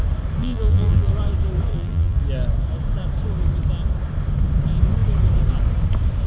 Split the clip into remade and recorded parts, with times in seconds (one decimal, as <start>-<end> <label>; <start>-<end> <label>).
0.0-0.4 recorded; 0.4-1.1 remade; 1.1-1.7 recorded; 1.7-2.2 remade; 2.2-6.3 recorded